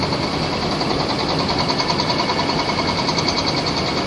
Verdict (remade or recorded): recorded